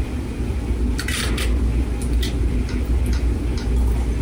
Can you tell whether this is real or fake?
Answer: real